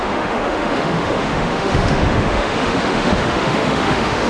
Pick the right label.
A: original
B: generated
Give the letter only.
B